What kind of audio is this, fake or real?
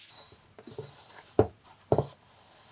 real